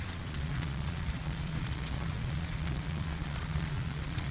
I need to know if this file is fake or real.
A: fake